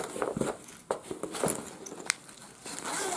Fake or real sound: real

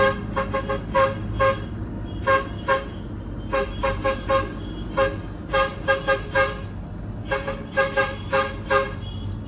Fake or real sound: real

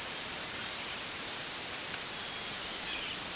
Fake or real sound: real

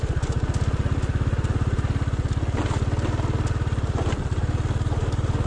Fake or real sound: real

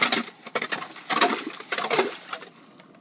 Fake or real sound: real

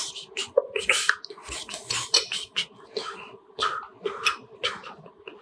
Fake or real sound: real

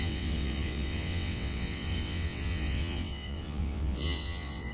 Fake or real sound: fake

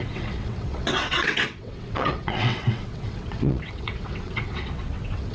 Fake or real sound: fake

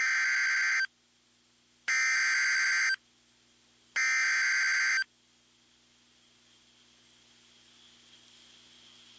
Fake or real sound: real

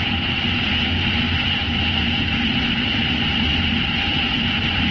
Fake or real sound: real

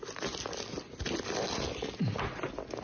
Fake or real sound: real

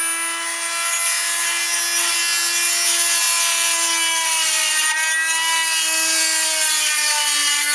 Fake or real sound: real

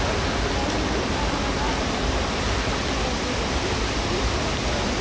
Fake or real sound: real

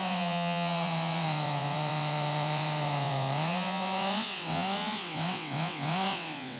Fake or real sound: fake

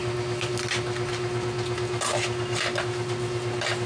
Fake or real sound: real